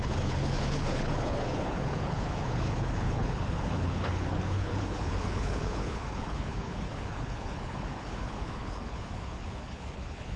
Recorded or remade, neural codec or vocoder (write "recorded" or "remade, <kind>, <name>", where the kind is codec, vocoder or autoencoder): remade, codec, HILCodec